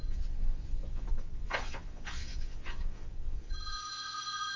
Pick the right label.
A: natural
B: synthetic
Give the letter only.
B